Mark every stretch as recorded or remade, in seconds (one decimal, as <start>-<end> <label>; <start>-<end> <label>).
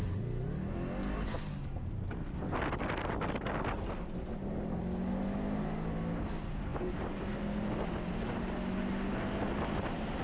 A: 0.0-10.2 recorded